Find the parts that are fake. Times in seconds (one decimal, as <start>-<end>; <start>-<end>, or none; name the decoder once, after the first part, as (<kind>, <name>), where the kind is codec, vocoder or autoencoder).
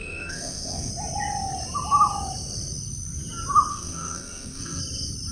0.0-0.9 (codec, SNAC); 3.7-4.8